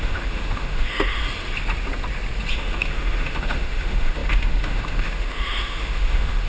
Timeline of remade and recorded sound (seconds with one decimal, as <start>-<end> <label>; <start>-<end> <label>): 0.0-1.2 remade; 1.2-2.5 recorded; 2.5-6.5 remade